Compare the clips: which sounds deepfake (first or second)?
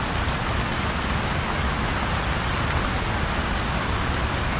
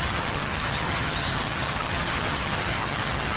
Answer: second